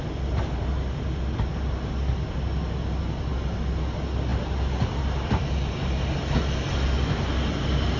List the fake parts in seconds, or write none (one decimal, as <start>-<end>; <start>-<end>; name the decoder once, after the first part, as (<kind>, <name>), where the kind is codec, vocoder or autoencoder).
none